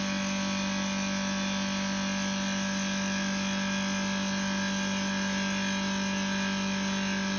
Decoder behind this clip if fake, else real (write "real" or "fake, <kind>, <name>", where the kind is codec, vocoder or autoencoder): real